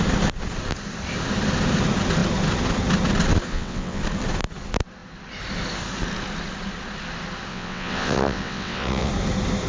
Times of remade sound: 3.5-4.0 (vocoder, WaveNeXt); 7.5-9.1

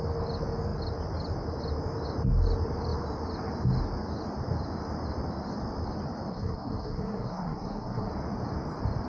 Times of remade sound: 6.3-8.1 (codec, SNAC)